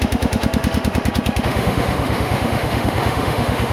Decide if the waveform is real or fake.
fake